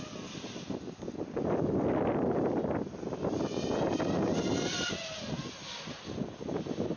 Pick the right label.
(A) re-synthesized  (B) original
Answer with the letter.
B